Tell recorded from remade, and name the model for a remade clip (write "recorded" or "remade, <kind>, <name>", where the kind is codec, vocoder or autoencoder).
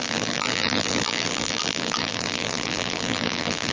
remade, vocoder, BigVGAN v2